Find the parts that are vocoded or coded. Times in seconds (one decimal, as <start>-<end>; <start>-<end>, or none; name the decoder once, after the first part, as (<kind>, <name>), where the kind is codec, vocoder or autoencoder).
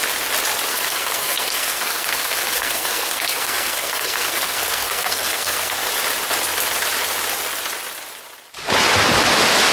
0.7-5.9 (codec, SNAC)